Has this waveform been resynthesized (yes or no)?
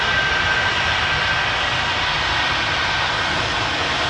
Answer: no